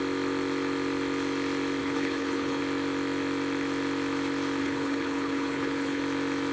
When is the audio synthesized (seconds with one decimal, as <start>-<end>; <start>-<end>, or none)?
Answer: 1.8-2.6; 4.6-6.0